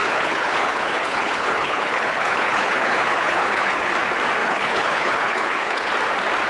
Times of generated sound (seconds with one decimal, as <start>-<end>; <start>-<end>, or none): 0.0-3.9; 4.4-5.9

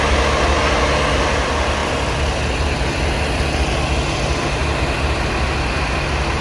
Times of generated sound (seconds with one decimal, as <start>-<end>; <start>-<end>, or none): none

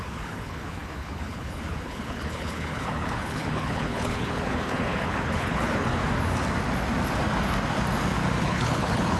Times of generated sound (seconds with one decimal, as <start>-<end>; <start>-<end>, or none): 0.0-6.0; 8.4-9.2

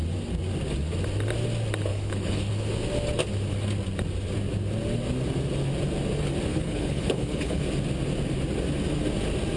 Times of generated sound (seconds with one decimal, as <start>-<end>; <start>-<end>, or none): 1.9-2.5; 6.5-7.6

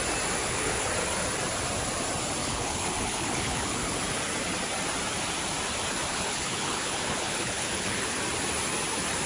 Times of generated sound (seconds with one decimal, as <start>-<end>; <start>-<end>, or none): 0.4-0.9; 2.4-4.0; 6.1-8.2

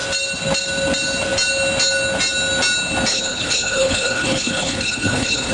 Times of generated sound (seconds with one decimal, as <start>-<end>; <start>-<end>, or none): 3.1-5.5